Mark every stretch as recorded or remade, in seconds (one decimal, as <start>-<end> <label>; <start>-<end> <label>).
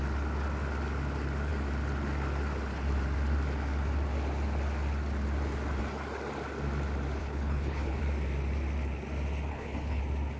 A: 0.0-7.2 recorded; 7.2-8.0 remade; 8.0-9.5 recorded; 9.5-10.0 remade; 10.0-10.4 recorded